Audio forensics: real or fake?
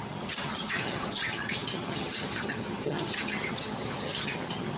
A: fake